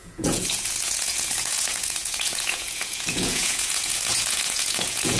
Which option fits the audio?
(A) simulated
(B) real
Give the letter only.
A